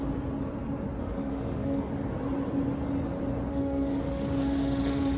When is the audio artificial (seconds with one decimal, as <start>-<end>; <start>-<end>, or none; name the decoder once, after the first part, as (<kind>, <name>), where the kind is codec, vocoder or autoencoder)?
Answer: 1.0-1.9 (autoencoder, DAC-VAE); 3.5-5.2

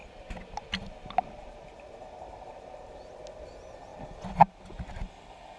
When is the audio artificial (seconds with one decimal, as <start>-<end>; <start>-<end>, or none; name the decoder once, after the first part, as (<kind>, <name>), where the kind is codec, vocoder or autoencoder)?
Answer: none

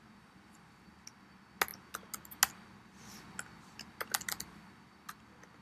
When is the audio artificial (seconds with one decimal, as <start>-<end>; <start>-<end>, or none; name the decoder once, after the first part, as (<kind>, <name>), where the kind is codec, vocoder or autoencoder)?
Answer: none